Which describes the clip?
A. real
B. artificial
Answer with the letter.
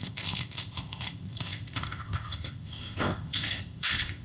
B